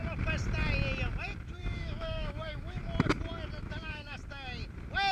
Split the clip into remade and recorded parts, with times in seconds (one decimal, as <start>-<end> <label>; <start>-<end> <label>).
0.0-1.6 recorded; 1.6-2.8 remade; 2.8-3.6 recorded; 3.6-4.2 remade; 4.2-5.1 recorded